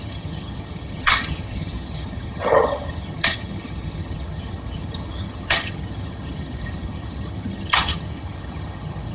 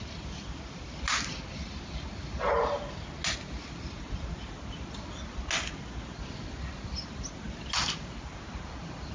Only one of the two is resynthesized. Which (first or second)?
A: first